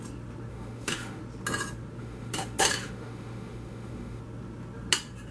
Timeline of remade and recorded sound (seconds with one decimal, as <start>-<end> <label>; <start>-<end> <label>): 0.0-0.5 recorded; 0.5-1.2 remade; 1.2-2.0 recorded; 2.0-4.2 remade; 4.2-5.3 recorded